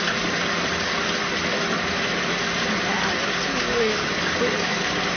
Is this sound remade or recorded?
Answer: recorded